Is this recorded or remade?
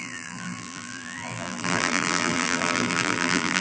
remade